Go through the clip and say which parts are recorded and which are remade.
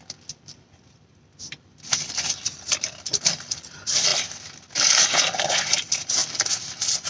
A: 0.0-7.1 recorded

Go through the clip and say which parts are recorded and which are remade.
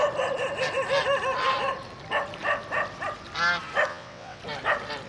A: 0.0-3.9 recorded; 3.9-4.4 remade; 4.4-5.1 recorded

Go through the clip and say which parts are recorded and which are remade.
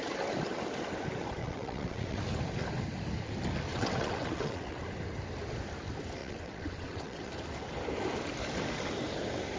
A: 0.0-1.4 recorded; 1.4-2.2 remade; 2.2-3.7 recorded; 3.7-4.8 remade; 4.8-6.2 recorded; 6.2-7.3 remade; 7.3-9.6 recorded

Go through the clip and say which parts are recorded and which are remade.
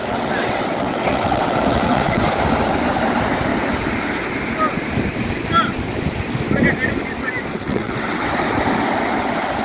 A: 0.0-2.2 remade; 2.2-7.5 recorded; 7.5-8.3 remade; 8.3-9.6 recorded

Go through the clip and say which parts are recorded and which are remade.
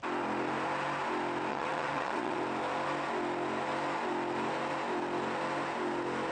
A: 0.0-1.5 recorded; 1.5-2.4 remade; 2.4-6.3 recorded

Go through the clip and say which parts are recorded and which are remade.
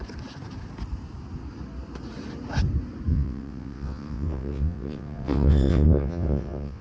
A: 0.0-3.1 recorded; 3.1-6.8 remade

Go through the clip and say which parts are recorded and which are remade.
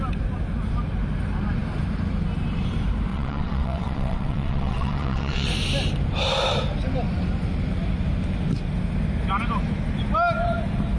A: 0.0-3.1 recorded; 3.1-5.5 remade; 5.5-11.0 recorded